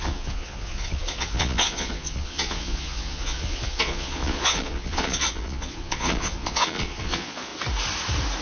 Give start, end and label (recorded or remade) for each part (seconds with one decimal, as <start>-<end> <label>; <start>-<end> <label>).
0.0-7.5 remade; 7.5-8.4 recorded